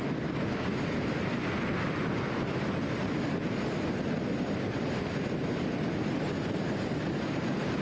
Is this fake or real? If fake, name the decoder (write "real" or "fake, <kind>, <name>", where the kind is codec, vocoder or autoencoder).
real